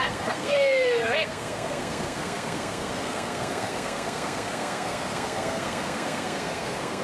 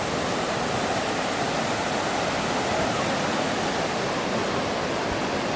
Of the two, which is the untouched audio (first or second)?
second